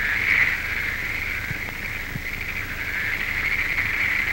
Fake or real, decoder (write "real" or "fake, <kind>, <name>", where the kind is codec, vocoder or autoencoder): real